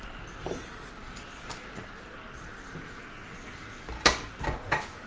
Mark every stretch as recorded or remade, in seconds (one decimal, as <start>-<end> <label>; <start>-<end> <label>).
0.0-5.1 recorded